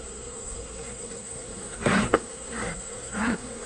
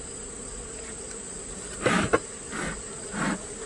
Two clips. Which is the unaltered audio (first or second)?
second